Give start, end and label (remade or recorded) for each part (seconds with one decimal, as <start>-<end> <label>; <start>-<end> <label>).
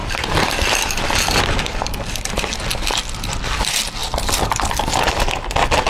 0.0-1.4 remade; 1.4-4.0 recorded; 4.0-4.8 remade; 4.8-5.9 recorded